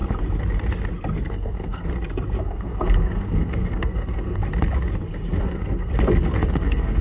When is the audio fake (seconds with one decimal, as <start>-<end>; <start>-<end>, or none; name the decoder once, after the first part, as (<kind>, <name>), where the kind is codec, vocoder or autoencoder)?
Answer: 1.3-1.9 (codec, SNAC); 2.4-4.4; 5.4-5.9; 6.5-7.0